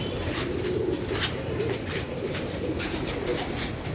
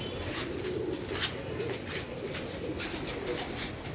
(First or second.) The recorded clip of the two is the second